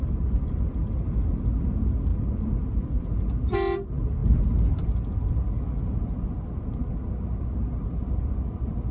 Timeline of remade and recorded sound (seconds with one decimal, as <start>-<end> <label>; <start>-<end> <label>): 0.0-8.9 recorded